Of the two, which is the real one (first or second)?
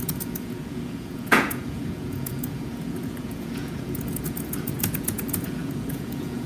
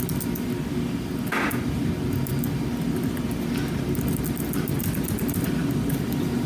second